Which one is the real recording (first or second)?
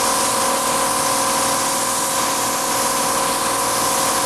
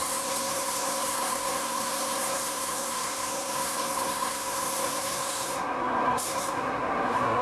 first